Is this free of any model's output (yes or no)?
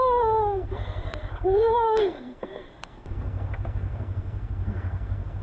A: no